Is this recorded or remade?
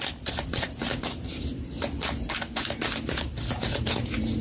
recorded